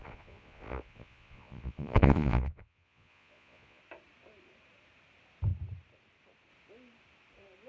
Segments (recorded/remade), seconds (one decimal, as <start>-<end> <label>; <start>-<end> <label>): 0.0-3.8 remade; 3.8-7.7 recorded